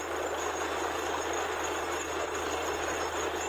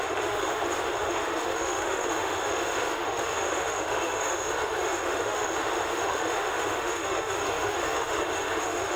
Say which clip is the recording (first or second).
first